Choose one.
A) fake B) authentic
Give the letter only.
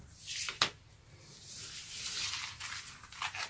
B